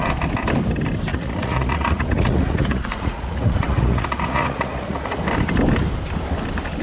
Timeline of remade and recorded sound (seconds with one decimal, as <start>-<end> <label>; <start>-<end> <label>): 0.0-1.1 recorded; 1.1-5.2 remade; 5.2-6.8 recorded

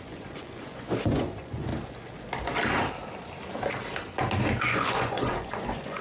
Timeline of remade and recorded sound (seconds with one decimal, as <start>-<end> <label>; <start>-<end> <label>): 0.0-1.7 remade; 1.7-4.6 recorded; 4.6-6.0 remade

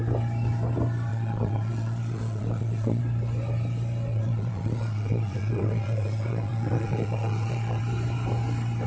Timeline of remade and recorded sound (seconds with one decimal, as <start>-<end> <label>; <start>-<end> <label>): 0.0-1.1 recorded; 1.1-3.0 remade; 3.0-4.1 recorded; 4.1-7.8 remade; 7.8-8.9 recorded

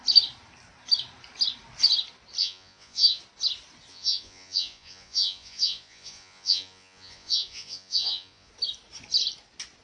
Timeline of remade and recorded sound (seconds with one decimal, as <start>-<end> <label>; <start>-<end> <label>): 0.0-2.4 recorded; 2.4-3.2 remade; 3.2-3.9 recorded; 3.9-8.5 remade; 8.5-9.8 recorded

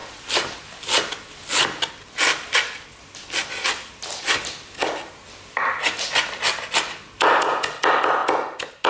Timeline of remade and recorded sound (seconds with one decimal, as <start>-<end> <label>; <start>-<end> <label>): 0.0-8.9 recorded

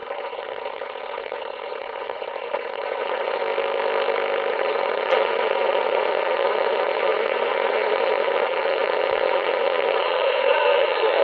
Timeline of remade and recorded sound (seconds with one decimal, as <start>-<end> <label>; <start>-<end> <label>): 0.0-3.4 remade; 3.4-4.5 recorded; 4.5-11.2 remade